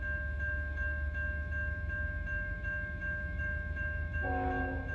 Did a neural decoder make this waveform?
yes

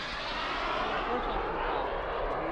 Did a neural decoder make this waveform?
no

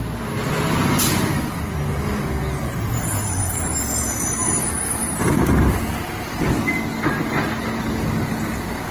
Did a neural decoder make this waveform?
no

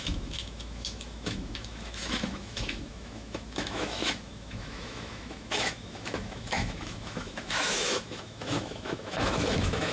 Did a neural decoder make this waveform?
yes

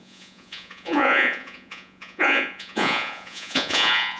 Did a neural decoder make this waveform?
yes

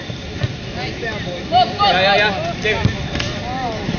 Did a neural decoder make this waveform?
no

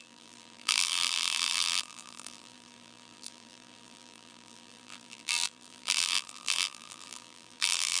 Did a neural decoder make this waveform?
yes